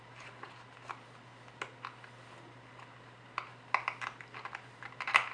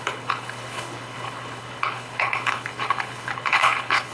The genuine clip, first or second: first